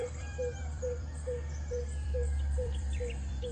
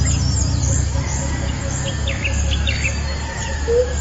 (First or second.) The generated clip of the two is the first